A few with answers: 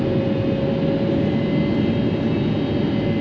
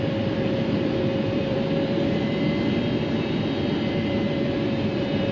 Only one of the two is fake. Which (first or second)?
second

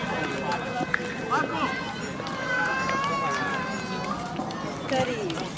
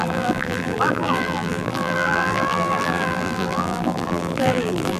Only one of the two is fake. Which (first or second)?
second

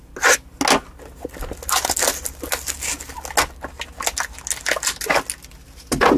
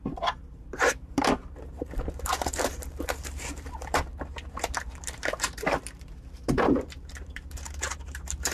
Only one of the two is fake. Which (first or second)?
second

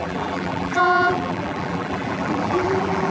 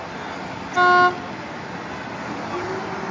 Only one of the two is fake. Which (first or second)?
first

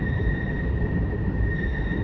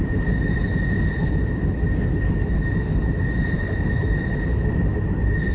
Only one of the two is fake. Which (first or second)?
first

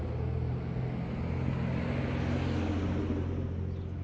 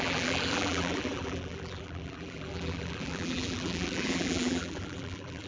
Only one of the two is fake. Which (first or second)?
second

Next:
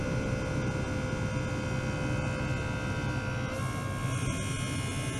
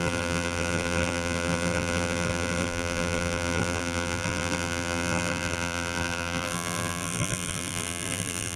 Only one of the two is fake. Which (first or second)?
second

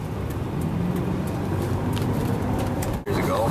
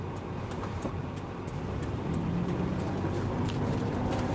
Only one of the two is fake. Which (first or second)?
first